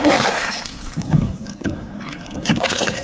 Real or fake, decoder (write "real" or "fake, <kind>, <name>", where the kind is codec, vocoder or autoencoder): fake, codec, SNAC